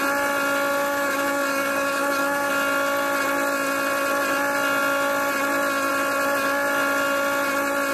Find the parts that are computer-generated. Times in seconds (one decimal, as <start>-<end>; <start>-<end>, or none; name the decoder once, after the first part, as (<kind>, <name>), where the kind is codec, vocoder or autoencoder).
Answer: 0.9-2.5 (codec, DAC)